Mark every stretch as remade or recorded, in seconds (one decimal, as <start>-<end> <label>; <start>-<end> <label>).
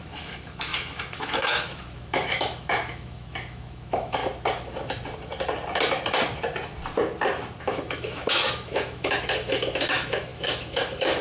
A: 0.0-4.2 remade; 4.2-7.6 recorded; 7.6-11.2 remade